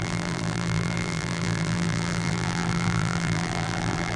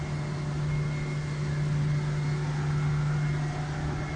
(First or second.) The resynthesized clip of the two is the first